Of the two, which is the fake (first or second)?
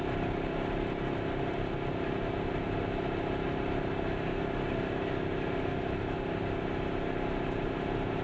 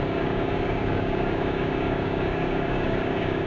second